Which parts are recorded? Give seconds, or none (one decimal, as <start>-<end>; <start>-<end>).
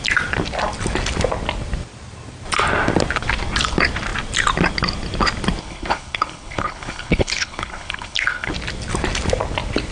0.0-5.6; 8.5-9.9